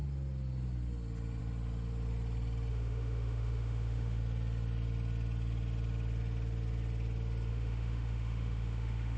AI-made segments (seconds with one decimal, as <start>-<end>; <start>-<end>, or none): 2.7-4.2; 7.5-9.2

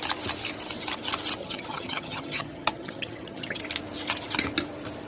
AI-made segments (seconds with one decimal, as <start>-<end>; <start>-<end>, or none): 1.4-3.6